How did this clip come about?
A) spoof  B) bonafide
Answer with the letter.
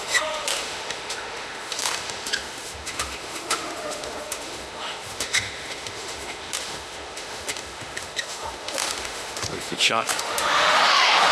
A